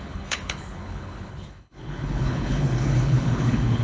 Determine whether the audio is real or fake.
fake